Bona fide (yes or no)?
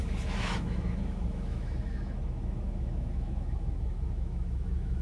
no